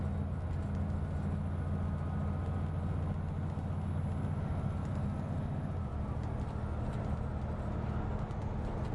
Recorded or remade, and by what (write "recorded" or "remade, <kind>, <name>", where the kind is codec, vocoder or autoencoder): recorded